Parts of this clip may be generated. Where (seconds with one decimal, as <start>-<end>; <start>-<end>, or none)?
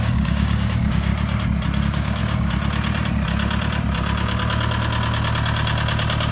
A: 0.0-1.1; 1.8-2.2